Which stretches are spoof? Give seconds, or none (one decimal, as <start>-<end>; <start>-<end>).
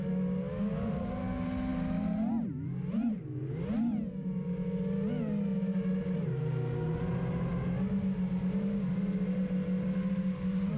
none